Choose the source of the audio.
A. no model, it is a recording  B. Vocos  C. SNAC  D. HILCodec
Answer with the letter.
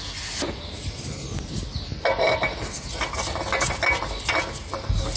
A